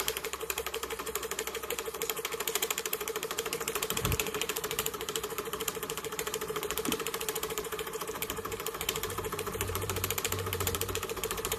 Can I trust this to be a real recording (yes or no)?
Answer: no